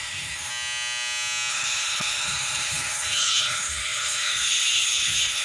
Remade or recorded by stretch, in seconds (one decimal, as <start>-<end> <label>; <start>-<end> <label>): 0.0-0.5 remade; 0.5-1.5 recorded; 1.5-5.4 remade